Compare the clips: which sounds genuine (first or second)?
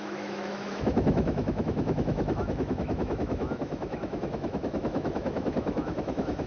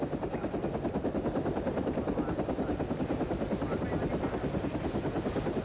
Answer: second